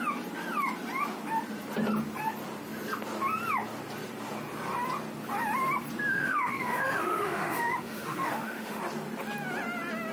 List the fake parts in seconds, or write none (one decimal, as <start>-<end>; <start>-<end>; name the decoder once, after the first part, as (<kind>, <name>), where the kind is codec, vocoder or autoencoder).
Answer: 6.1-8.8 (autoencoder, DAC-VAE)